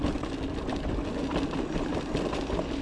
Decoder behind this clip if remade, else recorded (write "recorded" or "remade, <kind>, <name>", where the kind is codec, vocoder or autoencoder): recorded